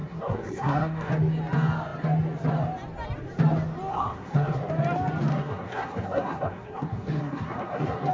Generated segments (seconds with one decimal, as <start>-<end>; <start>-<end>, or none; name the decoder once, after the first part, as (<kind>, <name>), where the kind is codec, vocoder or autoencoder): 0.0-1.1 (codec, SNAC); 3.9-4.7; 5.3-8.1